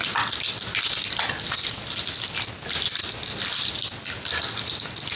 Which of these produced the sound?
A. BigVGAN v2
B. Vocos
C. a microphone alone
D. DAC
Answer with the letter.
C